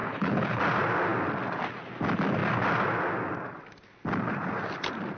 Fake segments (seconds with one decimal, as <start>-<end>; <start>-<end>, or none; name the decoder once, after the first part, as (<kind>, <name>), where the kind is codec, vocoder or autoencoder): 0.0-0.6 (codec, HILCodec)